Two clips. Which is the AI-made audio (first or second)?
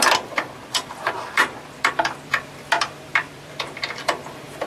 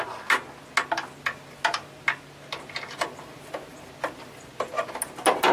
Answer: first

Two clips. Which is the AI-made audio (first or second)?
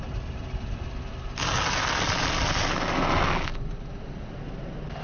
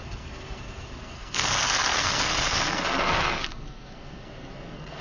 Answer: second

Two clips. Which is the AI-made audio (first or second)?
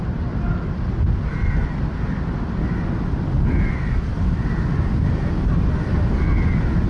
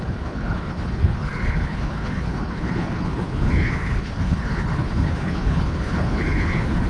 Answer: second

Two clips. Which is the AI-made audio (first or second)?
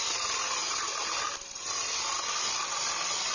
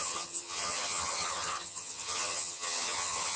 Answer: second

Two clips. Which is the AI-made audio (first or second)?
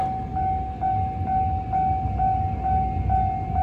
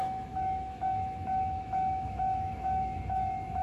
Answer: second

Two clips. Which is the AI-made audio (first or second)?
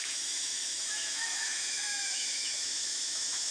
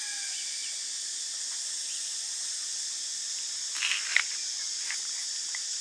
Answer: first